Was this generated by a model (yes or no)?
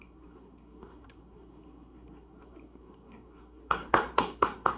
yes